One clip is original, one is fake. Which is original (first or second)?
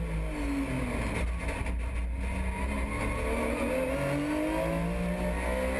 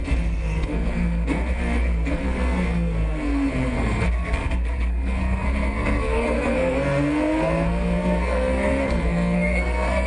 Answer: first